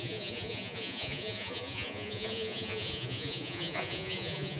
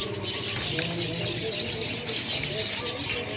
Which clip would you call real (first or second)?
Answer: second